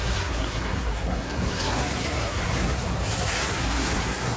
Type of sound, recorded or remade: remade